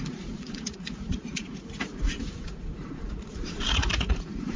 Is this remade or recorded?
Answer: remade